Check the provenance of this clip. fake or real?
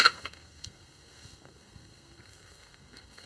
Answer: fake